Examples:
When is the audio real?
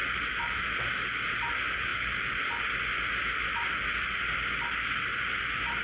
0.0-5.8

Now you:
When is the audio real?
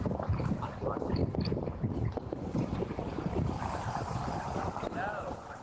0.0-5.6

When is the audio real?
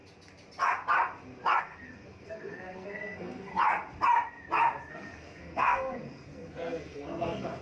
0.0-1.6; 3.5-4.9